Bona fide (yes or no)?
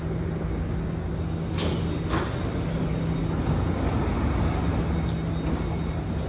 yes